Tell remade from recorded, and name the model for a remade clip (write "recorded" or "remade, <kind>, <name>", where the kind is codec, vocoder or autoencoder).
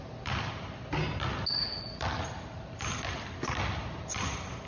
recorded